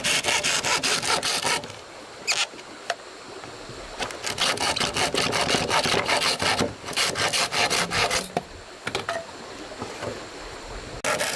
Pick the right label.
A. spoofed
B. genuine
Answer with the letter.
B